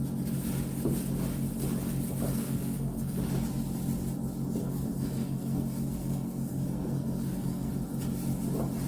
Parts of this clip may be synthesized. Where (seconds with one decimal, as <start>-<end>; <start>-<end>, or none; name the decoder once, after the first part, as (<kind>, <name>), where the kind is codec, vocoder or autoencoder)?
2.3-3.2 (codec, SNAC); 4.6-7.7